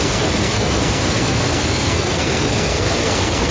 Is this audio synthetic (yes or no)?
yes